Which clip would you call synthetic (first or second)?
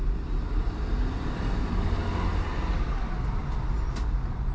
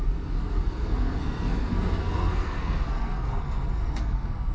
second